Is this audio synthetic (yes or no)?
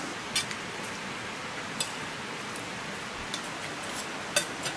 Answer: no